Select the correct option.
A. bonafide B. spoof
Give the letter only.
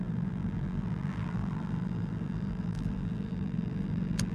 B